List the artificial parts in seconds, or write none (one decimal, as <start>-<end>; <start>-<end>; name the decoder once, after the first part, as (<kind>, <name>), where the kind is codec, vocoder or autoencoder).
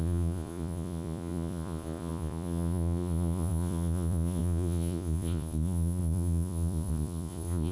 0.0-7.7 (vocoder, Vocos)